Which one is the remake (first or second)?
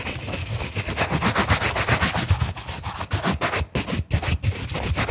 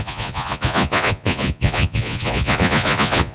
second